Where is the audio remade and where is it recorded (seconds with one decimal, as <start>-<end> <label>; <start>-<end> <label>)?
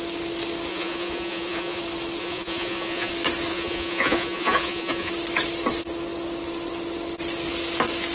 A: 0.0-0.7 recorded; 0.7-1.8 remade; 1.8-2.2 recorded; 2.2-3.1 remade; 3.1-3.5 recorded; 3.5-5.1 remade; 5.1-8.1 recorded